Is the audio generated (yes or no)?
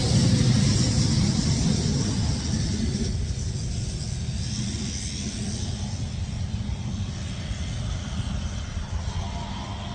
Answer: no